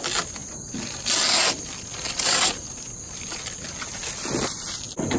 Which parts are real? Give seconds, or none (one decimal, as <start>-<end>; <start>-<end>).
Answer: 0.0-5.2